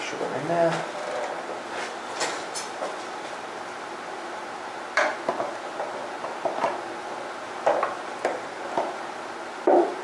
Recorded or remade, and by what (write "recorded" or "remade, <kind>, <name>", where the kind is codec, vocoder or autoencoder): recorded